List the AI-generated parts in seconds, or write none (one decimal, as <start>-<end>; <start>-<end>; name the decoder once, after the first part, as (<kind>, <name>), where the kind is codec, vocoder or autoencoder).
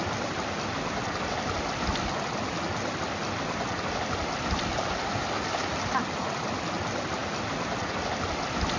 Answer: none